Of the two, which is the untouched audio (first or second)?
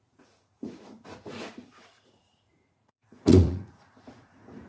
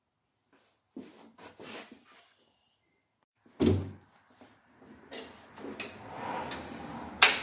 second